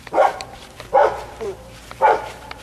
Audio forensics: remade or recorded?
remade